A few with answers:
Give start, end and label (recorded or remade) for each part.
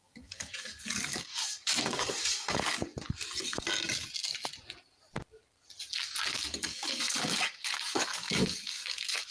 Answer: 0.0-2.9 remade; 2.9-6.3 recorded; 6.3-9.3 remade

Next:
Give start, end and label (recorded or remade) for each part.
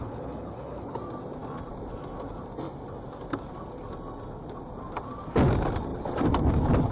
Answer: 0.0-0.9 remade; 0.9-6.9 recorded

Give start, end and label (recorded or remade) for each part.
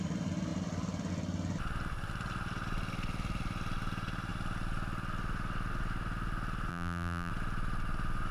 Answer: 0.0-6.7 recorded; 6.7-7.3 remade; 7.3-8.3 recorded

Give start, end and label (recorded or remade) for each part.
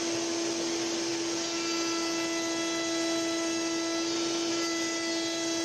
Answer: 0.0-5.6 recorded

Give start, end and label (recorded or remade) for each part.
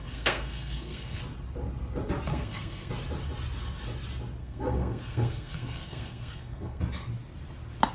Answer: 0.0-1.2 remade; 1.2-2.3 recorded; 2.3-2.9 remade; 2.9-4.4 recorded; 4.4-6.8 remade; 6.8-7.9 recorded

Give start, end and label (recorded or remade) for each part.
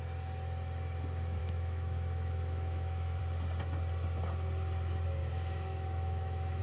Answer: 0.0-1.4 recorded; 1.4-3.2 remade; 3.2-5.2 recorded; 5.2-6.6 remade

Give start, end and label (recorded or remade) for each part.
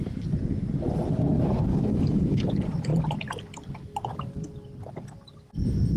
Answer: 0.0-1.7 recorded; 1.7-2.4 remade; 2.4-6.0 recorded